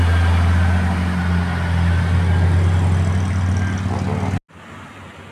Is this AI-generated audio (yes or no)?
no